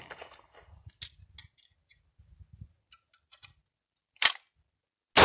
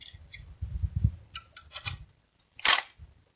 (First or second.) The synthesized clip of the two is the second